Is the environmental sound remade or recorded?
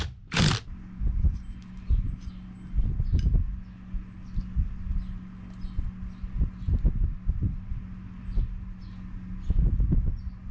recorded